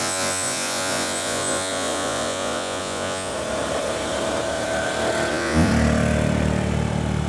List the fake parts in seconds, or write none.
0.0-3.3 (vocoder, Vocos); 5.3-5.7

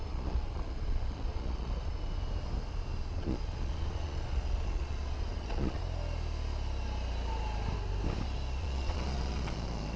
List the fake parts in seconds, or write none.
0.0-2.0 (vocoder, Vocos); 3.0-5.8; 8.6-10.0

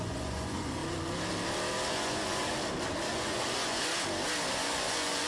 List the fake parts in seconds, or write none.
0.0-0.8 (vocoder, Vocos); 1.9-2.4; 3.1-3.9; 4.5-5.3

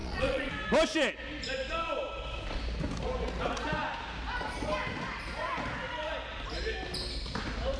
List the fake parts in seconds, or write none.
0.0-0.5 (vocoder, Vocos)

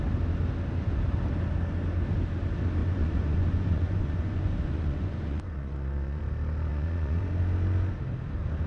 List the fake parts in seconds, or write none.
2.8-6.2 (vocoder, Vocos); 6.7-7.3

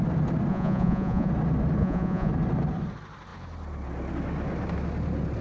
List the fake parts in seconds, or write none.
0.5-1.3 (vocoder, Vocos); 1.8-2.3